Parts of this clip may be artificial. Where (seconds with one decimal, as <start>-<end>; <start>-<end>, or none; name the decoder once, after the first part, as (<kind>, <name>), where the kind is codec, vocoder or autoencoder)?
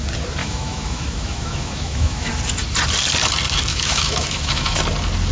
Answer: 0.4-2.3 (autoencoder, DAC-VAE); 3.7-4.8